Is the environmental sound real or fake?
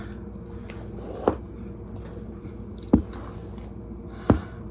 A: real